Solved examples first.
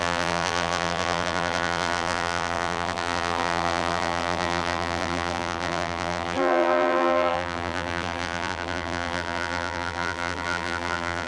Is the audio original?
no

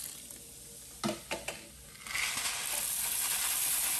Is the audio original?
yes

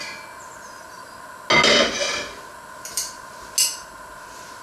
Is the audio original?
yes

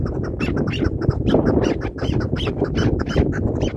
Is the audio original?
no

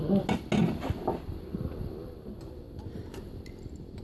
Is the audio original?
yes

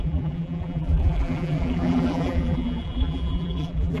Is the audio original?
no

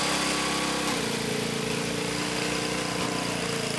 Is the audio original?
yes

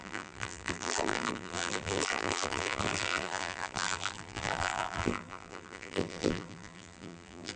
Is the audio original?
no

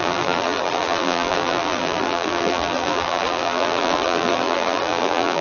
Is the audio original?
no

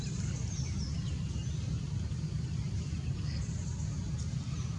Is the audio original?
yes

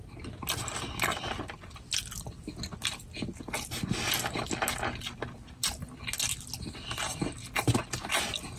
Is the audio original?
yes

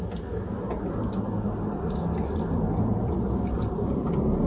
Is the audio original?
yes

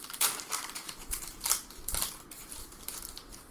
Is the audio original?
no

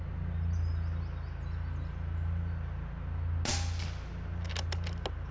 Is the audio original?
yes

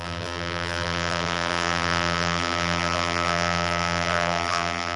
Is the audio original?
no